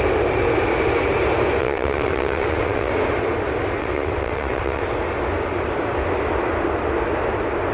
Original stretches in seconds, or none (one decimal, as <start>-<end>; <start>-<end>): 0.0-1.6; 2.9-3.8; 4.8-7.7